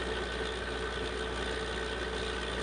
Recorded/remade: recorded